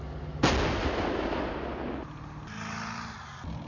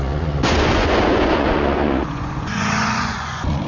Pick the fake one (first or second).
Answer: second